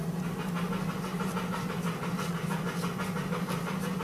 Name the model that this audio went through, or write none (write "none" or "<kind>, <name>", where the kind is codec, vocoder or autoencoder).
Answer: none